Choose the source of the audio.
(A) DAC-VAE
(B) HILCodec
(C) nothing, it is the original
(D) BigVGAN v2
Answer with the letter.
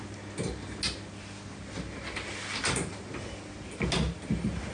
C